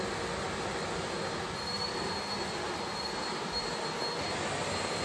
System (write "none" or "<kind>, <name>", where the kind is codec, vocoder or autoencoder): none